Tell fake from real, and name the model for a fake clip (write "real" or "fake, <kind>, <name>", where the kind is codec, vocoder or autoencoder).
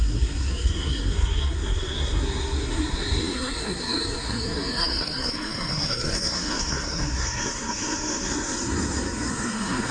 fake, codec, SNAC